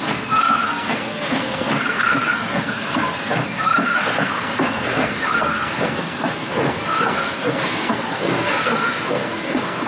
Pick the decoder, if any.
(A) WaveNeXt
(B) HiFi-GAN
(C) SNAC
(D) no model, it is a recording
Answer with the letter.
C